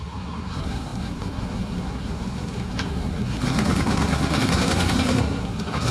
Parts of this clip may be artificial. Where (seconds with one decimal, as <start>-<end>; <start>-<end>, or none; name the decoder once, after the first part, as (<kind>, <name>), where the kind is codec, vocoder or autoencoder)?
0.0-5.9 (codec, SNAC)